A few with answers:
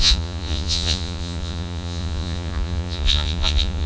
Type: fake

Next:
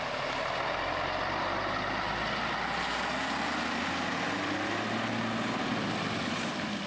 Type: real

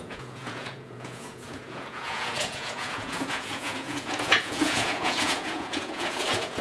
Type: fake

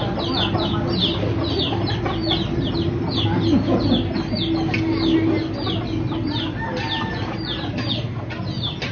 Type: real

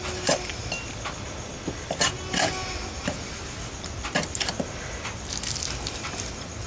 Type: real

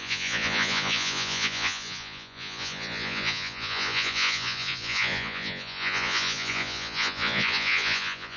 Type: fake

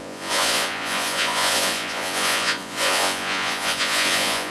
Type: fake